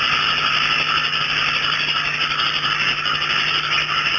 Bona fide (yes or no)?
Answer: yes